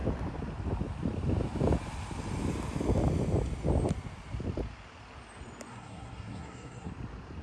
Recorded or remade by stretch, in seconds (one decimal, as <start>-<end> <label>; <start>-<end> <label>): 0.0-5.7 recorded; 5.7-6.9 remade; 6.9-7.4 recorded